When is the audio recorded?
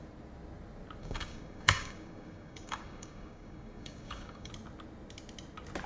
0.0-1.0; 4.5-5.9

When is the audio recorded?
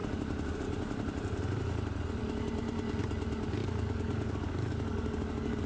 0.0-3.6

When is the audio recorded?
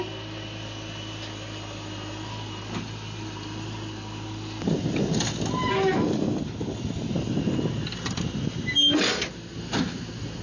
0.0-10.4